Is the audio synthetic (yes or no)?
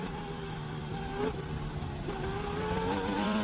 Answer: yes